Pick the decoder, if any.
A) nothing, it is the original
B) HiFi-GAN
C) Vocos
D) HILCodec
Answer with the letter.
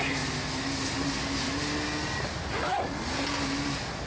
A